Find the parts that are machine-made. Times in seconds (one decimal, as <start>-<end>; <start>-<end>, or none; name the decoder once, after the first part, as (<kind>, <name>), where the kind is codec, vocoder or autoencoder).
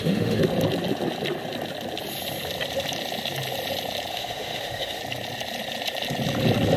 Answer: 0.0-0.4 (autoencoder, DAC-VAE); 4.1-5.0